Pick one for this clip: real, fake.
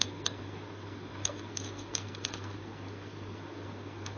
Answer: fake